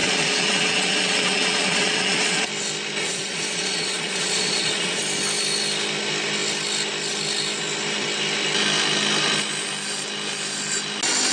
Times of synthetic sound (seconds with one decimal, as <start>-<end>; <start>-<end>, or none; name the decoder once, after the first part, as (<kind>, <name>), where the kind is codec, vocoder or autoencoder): 0.0-2.5 (vocoder, Vocos); 3.0-5.0